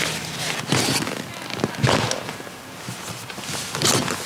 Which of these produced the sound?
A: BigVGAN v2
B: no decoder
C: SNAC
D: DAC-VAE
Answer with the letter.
B